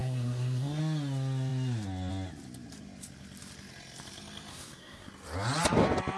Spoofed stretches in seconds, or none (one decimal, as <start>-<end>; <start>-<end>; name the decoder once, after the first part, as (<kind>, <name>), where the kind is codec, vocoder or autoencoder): 0.0-0.8 (codec, SNAC); 4.5-5.1